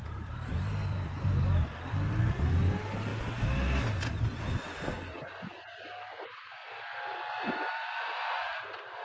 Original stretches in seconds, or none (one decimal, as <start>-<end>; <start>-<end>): 0.0-7.1